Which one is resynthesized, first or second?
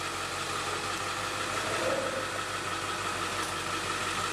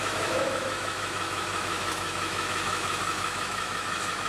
second